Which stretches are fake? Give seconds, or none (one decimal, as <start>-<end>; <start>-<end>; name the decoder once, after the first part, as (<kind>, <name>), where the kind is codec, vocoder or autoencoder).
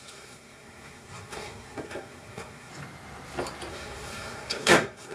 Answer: 0.0-2.7 (codec, SNAC); 3.7-5.1